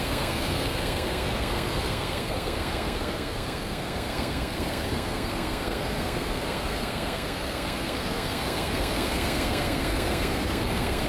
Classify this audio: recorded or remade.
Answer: remade